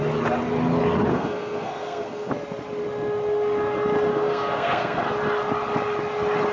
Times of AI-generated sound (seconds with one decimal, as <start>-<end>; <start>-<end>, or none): 1.1-2.3; 4.1-5.0